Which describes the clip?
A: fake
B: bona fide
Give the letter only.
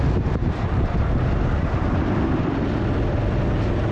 B